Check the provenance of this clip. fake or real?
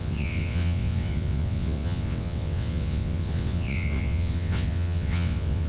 fake